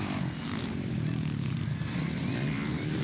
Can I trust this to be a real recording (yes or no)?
yes